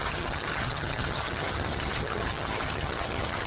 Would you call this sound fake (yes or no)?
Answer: yes